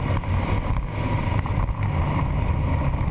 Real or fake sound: real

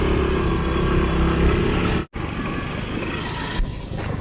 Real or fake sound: real